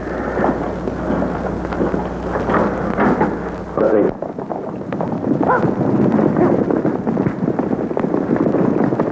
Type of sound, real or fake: real